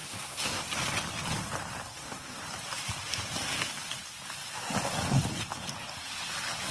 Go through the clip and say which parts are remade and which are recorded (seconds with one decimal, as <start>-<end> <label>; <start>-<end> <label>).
0.0-0.6 remade; 0.6-1.9 recorded; 1.9-2.4 remade; 2.4-6.7 recorded